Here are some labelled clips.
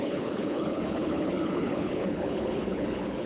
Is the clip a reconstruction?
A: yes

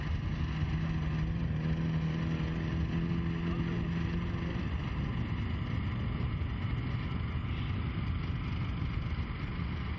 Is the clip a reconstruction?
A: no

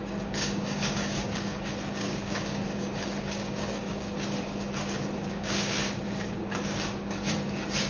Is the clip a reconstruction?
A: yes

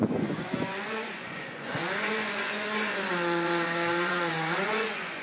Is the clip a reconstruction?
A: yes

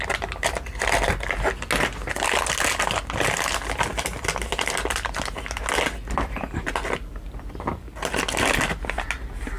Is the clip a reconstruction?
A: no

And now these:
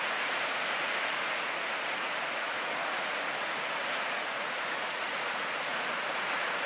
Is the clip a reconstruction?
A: yes